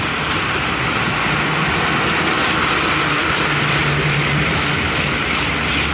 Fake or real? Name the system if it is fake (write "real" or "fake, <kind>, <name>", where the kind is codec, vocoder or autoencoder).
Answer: real